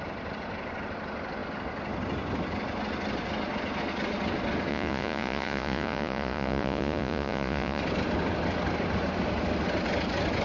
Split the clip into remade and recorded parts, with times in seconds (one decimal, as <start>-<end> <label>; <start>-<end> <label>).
0.0-4.7 recorded; 4.7-7.8 remade; 7.8-10.4 recorded